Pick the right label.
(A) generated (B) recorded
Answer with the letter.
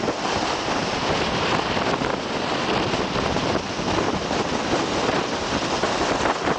B